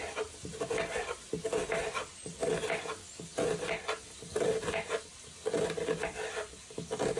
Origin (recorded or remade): recorded